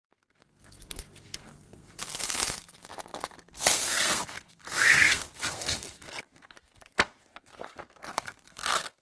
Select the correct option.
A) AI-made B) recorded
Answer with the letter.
A